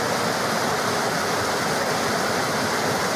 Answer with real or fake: real